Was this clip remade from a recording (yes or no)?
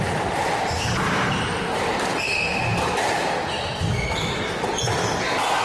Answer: no